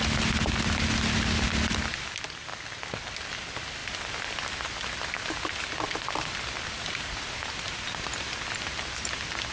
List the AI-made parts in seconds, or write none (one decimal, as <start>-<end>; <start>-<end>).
none